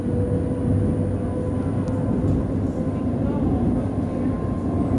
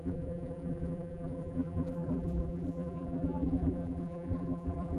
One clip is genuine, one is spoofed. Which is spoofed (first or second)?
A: second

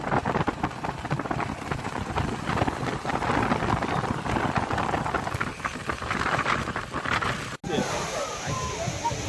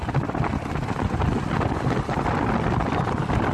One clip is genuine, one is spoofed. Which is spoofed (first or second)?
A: second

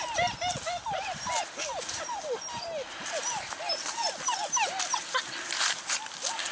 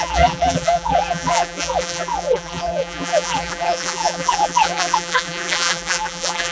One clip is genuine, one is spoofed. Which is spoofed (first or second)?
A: second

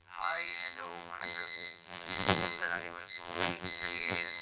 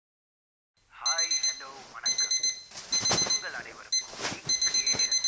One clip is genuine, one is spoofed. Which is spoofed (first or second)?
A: first